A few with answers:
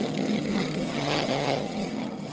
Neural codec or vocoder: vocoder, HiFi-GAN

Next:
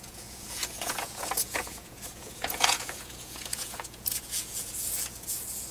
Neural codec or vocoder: vocoder, Vocos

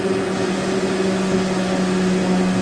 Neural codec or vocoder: none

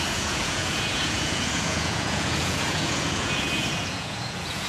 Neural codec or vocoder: vocoder, Vocos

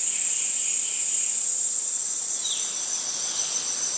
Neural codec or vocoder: vocoder, BigVGAN v2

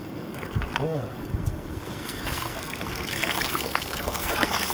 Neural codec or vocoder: codec, SNAC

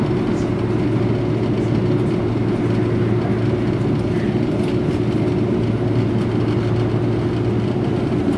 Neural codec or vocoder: none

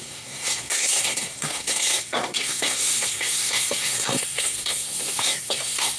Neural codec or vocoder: codec, SNAC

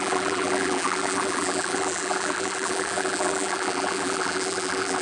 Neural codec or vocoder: vocoder, BigVGAN v2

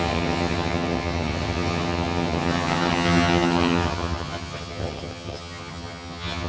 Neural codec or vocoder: vocoder, HiFi-GAN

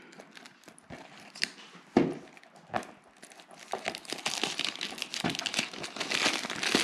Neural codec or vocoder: none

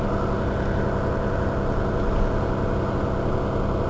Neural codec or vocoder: none